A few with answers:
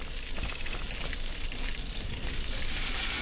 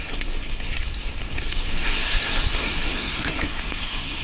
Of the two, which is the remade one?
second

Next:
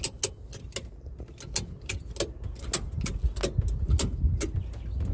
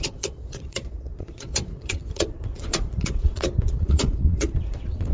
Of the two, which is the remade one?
second